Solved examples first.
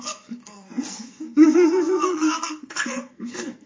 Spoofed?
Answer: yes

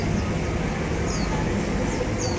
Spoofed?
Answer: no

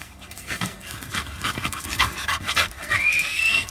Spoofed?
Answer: yes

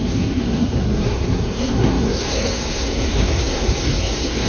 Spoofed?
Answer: yes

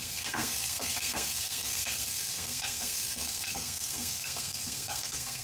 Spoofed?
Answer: yes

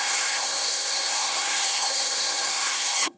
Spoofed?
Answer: yes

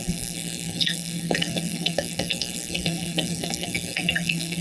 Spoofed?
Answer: yes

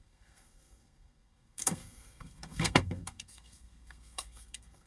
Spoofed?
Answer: yes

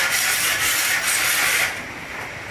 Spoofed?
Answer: no